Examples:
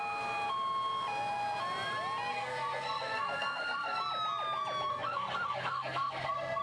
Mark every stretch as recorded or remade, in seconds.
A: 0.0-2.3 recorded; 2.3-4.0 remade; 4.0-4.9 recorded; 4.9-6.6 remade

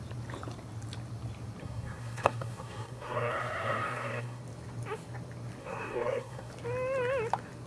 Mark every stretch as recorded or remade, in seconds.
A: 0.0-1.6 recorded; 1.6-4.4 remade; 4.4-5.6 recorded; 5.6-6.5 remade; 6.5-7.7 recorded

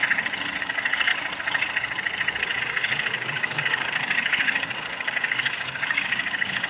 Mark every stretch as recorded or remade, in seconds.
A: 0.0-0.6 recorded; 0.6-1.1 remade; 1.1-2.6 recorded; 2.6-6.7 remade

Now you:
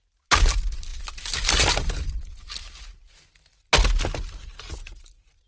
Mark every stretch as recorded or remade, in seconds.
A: 0.0-5.5 recorded